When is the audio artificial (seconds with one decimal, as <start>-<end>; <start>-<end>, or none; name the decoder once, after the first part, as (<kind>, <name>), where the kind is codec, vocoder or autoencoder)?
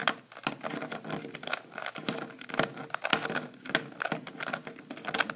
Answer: none